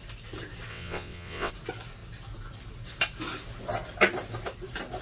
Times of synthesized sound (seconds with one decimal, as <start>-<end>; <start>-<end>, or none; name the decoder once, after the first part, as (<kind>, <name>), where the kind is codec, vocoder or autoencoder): 0.7-1.5 (vocoder, WaveNeXt)